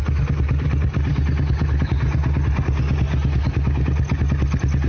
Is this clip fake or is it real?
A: real